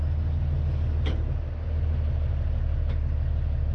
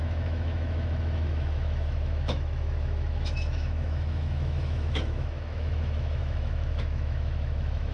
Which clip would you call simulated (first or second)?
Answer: second